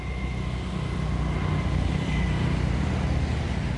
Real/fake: real